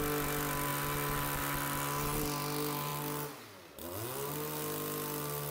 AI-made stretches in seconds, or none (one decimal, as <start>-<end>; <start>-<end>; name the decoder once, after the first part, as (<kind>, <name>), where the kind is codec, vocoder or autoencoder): none